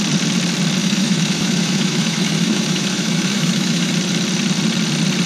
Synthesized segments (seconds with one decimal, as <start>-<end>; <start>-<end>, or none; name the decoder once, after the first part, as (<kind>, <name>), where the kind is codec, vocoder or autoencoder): 0.8-3.9 (autoencoder, DAC-VAE)